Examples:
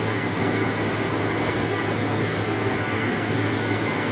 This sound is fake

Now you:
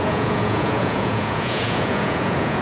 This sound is fake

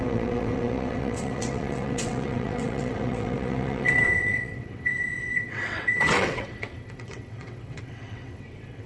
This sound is fake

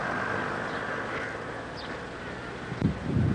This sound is real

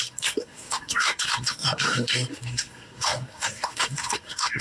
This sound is fake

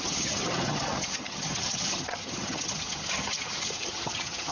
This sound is fake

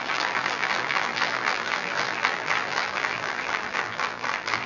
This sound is fake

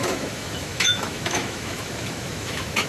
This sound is fake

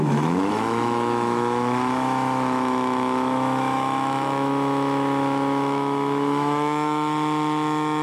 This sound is fake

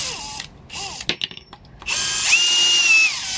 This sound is real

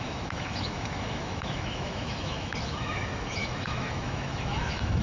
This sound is fake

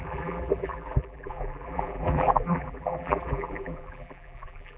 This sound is fake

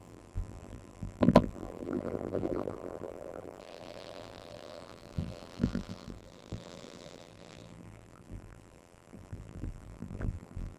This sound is fake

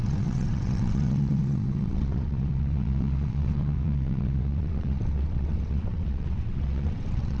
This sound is fake